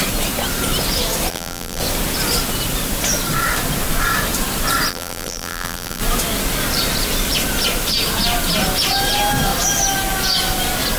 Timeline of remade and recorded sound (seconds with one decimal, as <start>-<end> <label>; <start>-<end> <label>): 0.0-1.3 recorded; 1.3-1.8 remade; 1.8-4.9 recorded; 4.9-6.0 remade; 6.0-11.0 recorded